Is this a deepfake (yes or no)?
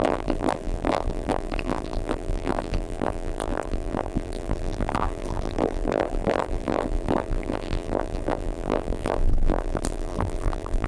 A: yes